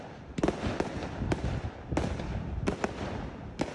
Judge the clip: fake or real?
real